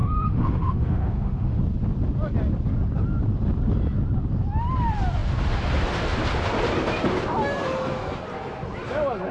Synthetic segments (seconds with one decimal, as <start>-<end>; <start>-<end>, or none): 0.0-1.6